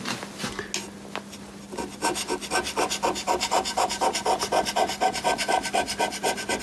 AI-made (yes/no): no